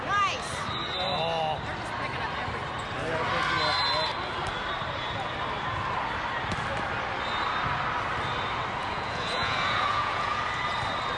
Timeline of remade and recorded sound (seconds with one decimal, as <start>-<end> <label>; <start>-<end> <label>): 0.0-8.8 recorded; 8.8-10.4 remade; 10.4-11.2 recorded